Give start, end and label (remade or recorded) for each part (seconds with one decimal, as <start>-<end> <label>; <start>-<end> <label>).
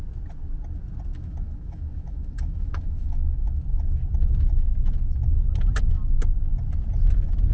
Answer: 0.0-1.1 recorded; 1.1-3.6 remade; 3.6-7.5 recorded